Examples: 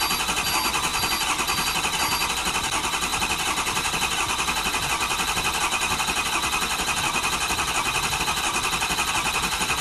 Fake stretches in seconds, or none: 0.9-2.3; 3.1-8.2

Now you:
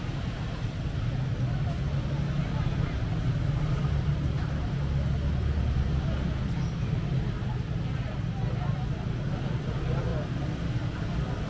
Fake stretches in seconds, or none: none

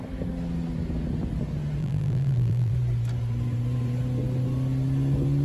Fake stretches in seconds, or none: 1.8-2.7

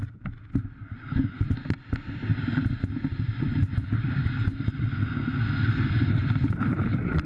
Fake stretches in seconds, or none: 2.3-4.9; 6.2-7.3

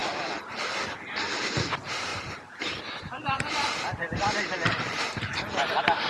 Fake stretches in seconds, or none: 0.9-2.1; 2.8-6.1

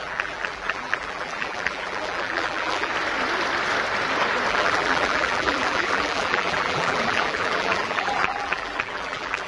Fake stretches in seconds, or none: 0.0-2.9; 4.5-9.5

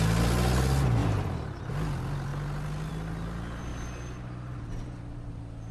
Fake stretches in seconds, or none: 1.0-1.7

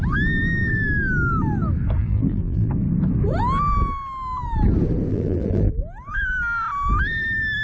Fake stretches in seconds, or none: 2.0-2.7; 5.1-5.7